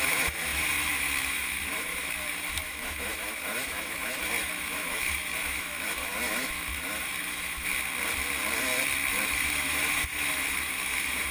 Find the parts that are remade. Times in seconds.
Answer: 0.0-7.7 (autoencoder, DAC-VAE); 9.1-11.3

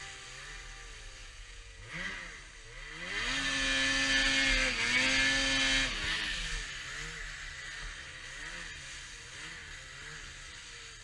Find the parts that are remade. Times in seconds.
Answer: 1.2-1.9 (vocoder, Vocos)

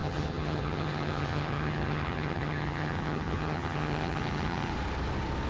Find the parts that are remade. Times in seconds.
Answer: 0.0-4.7 (vocoder, HiFi-GAN)

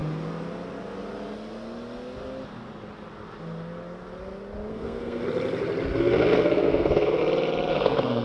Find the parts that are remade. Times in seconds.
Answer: 4.7-5.2 (codec, SNAC); 6.0-7.2; 7.7-8.2